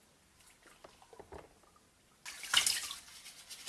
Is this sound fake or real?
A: real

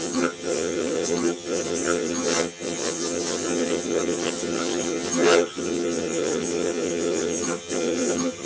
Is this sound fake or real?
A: fake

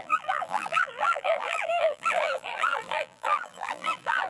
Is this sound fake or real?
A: fake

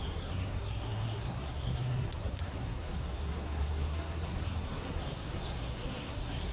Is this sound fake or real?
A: fake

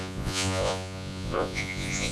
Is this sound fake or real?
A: fake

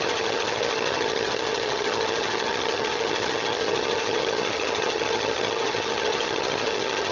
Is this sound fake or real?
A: fake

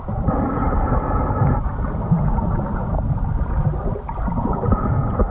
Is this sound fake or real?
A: real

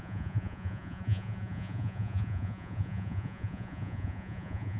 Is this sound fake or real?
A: fake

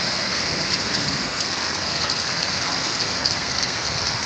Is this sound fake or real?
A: fake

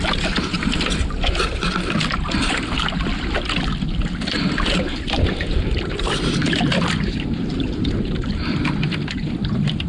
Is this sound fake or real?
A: fake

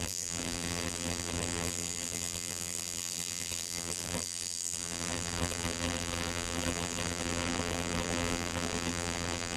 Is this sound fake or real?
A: fake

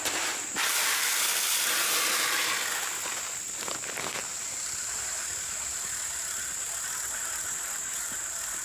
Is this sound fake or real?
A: real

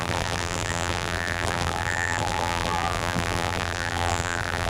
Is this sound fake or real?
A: fake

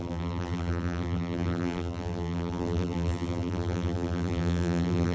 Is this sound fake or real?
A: fake